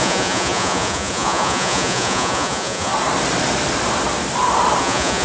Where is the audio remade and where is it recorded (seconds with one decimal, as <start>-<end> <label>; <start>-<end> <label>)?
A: 0.0-2.9 remade; 2.9-4.8 recorded; 4.8-5.2 remade